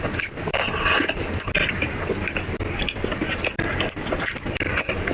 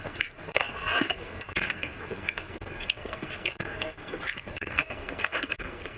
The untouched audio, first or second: first